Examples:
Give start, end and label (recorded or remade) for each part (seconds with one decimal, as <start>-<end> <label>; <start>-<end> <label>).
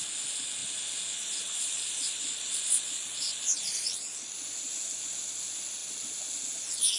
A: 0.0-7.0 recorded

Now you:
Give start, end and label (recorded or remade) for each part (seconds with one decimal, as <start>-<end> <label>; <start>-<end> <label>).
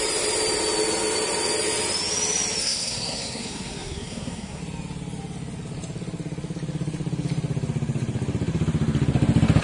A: 0.0-2.6 recorded; 2.6-4.6 remade; 4.6-9.6 recorded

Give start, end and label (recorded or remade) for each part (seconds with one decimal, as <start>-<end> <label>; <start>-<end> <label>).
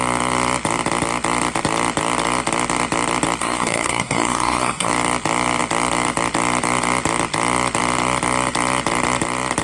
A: 0.0-3.4 recorded; 3.4-4.9 remade; 4.9-9.6 recorded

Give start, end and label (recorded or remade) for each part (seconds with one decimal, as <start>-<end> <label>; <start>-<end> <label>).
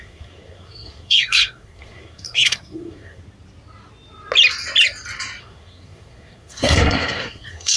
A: 0.0-3.2 remade; 3.2-5.4 recorded; 5.4-7.8 remade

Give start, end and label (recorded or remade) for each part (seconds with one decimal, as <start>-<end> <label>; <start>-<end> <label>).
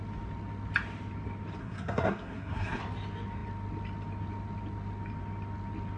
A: 0.0-1.6 recorded; 1.6-2.8 remade; 2.8-6.0 recorded